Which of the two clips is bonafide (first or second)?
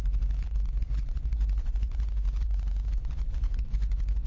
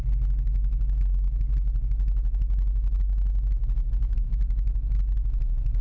second